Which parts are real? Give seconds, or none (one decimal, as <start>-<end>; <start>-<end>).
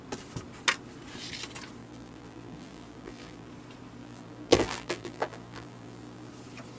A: 0.0-1.8; 3.5-4.0; 6.3-6.8